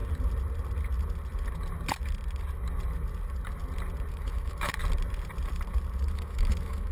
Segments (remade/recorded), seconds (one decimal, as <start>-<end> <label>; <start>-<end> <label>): 0.0-4.1 recorded; 4.1-4.8 remade; 4.8-6.0 recorded; 6.0-6.9 remade